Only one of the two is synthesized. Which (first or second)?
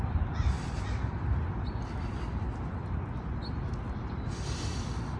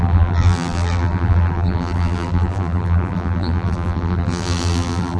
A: second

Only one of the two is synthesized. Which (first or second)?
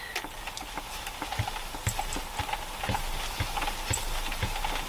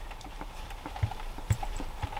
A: second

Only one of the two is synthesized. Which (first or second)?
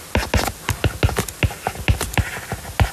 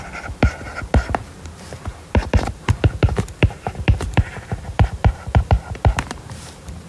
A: second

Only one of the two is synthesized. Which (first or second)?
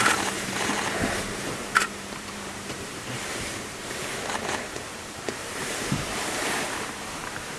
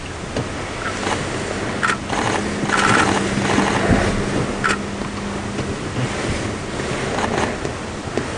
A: first